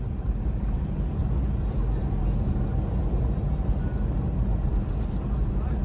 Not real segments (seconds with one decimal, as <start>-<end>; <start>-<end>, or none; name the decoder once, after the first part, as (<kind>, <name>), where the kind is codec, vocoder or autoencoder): none